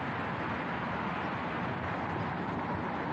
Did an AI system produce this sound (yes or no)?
no